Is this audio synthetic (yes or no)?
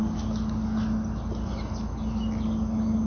no